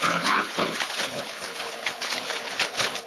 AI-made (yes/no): yes